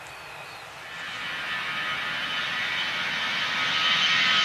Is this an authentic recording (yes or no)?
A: yes